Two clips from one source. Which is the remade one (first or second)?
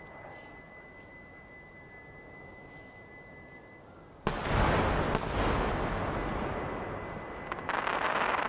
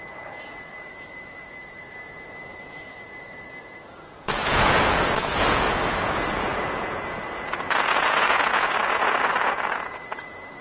second